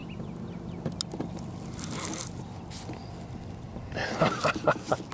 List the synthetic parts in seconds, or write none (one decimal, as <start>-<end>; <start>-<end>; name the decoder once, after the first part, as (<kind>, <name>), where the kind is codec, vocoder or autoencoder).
none